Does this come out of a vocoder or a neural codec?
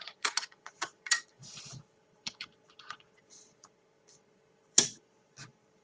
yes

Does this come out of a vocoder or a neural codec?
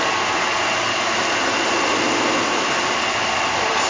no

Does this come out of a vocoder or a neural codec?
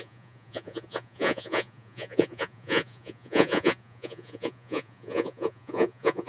yes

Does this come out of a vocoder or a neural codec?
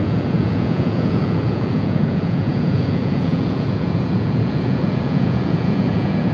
yes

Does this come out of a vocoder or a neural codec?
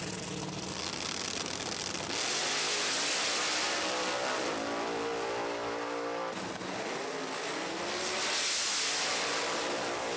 no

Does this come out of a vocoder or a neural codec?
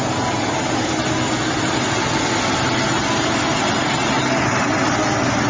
no